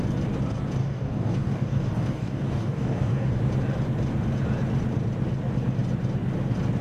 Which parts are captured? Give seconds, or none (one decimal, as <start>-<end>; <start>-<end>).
0.0-0.8; 3.4-6.8